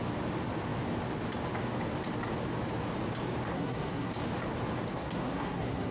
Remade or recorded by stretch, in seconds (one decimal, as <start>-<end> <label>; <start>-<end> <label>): 0.0-3.5 recorded; 3.5-4.1 remade; 4.1-4.9 recorded; 4.9-5.9 remade